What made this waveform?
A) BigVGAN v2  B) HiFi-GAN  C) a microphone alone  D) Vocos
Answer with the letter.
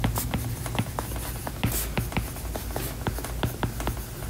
C